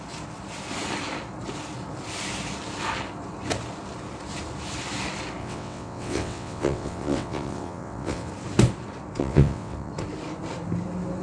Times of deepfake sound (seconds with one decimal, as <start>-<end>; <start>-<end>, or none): 5.4-8.3; 9.2-9.9